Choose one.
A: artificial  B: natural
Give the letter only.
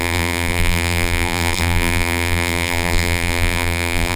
A